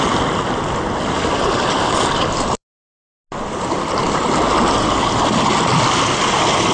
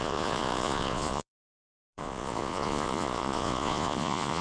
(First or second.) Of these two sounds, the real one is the first